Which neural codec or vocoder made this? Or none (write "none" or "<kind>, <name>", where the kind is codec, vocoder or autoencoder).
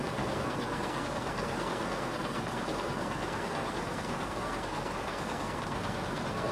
codec, SNAC